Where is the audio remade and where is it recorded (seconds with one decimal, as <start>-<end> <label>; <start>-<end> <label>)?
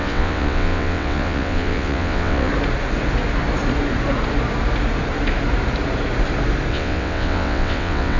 0.0-2.5 remade; 2.5-6.7 recorded; 6.7-8.2 remade